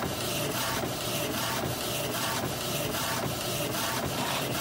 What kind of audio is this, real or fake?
real